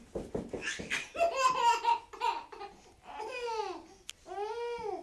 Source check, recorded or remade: recorded